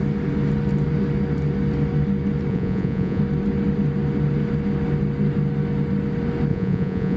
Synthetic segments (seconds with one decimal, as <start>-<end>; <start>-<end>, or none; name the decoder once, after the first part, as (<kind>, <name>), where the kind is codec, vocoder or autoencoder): 2.5-3.2 (vocoder, Vocos); 6.5-7.2